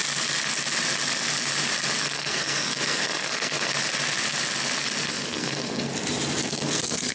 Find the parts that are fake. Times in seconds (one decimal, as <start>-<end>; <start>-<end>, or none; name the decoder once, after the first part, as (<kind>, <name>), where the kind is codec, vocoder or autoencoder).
2.0-3.7 (codec, SNAC); 5.1-5.9; 6.4-7.1